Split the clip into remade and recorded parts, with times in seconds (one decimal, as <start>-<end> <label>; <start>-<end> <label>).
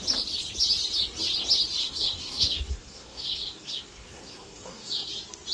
0.0-1.8 recorded; 1.8-5.1 remade; 5.1-5.5 recorded